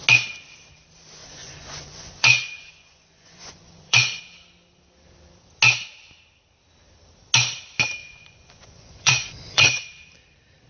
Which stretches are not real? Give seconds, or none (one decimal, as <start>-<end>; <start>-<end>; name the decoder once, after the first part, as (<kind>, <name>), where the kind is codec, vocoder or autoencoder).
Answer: 1.2-4.2 (vocoder, Vocos); 8.0-9.9